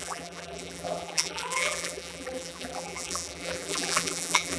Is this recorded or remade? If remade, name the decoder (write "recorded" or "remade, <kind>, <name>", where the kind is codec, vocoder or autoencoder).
remade, vocoder, BigVGAN v2